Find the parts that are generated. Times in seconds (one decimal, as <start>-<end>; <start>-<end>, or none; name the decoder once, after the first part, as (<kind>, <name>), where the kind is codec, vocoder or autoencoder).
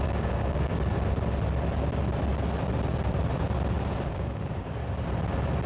0.0-0.7 (codec, DAC); 4.1-4.8